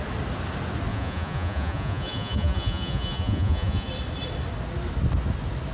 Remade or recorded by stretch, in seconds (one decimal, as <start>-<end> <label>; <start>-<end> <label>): 0.0-0.9 recorded; 0.9-3.9 remade; 3.9-5.7 recorded